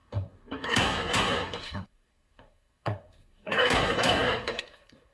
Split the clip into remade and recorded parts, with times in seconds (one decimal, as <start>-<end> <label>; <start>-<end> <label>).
0.0-5.1 remade